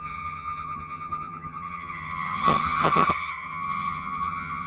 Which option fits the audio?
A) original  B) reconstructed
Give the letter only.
B